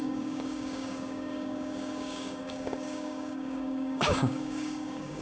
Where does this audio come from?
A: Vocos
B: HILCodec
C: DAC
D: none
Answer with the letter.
C